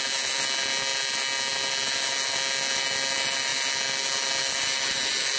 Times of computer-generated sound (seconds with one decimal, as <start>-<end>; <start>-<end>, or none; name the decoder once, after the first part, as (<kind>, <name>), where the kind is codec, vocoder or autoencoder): none